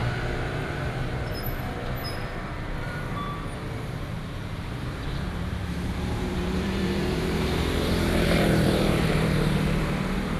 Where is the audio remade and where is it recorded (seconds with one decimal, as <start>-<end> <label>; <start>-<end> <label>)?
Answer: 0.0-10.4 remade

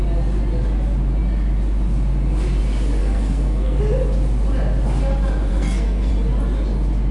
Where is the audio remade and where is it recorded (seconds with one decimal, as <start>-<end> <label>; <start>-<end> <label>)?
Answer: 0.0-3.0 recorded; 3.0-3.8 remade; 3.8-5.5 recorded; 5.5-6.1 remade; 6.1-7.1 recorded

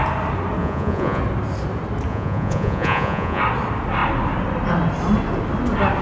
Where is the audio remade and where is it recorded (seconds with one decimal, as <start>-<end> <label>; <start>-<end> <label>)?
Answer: 0.0-0.6 recorded; 0.6-1.2 remade; 1.2-2.1 recorded; 2.1-3.4 remade; 3.4-6.0 recorded

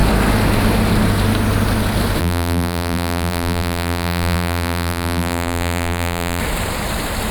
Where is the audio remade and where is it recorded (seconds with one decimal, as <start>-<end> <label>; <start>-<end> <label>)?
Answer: 0.0-2.2 recorded; 2.2-6.4 remade; 6.4-7.3 recorded

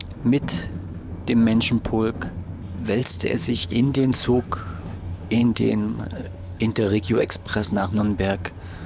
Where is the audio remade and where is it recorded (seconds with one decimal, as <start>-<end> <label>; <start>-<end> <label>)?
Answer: 0.0-3.0 recorded; 3.0-4.3 remade; 4.3-5.4 recorded; 5.4-8.0 remade; 8.0-8.9 recorded

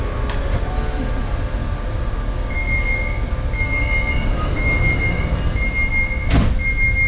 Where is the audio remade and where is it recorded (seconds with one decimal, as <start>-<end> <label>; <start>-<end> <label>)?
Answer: 0.0-1.6 recorded; 1.6-5.2 remade; 5.2-7.1 recorded